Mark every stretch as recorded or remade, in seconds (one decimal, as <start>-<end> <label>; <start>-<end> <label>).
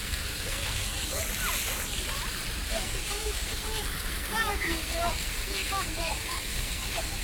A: 0.0-1.2 remade; 1.2-2.7 recorded; 2.7-7.2 remade